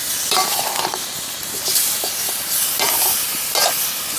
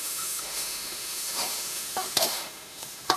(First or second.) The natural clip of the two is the first